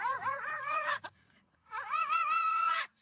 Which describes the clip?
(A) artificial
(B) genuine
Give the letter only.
A